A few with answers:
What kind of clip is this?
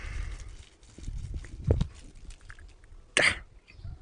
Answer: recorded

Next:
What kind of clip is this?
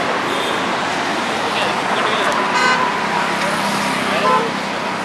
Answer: recorded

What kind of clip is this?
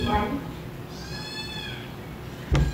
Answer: recorded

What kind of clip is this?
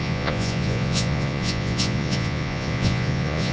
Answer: remade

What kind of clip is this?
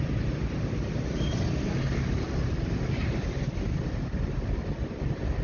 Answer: recorded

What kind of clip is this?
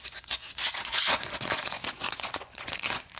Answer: remade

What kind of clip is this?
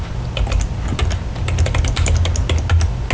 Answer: recorded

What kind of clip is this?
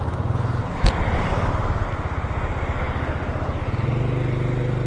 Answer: recorded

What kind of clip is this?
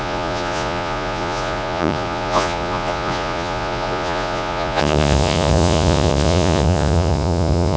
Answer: remade